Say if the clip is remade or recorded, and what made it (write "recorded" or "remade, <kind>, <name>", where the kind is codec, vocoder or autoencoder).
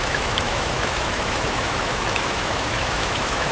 remade, autoencoder, DAC-VAE